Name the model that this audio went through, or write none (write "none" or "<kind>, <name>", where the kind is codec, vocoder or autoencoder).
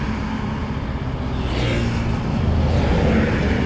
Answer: none